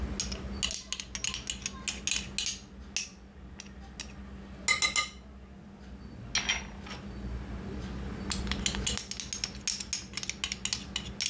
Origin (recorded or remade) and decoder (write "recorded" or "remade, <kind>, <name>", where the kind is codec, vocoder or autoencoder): recorded